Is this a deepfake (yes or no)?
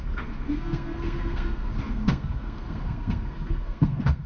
yes